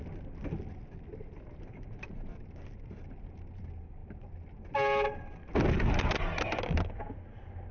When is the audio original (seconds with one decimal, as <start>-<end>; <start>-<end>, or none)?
0.0-1.1; 3.6-7.7